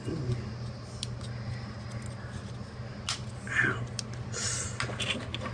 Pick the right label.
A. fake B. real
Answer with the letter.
B